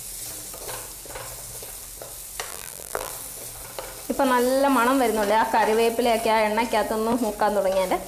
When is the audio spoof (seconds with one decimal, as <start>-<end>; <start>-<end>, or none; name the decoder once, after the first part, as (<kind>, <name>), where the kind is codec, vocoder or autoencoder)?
2.5-3.1 (vocoder, BigVGAN v2)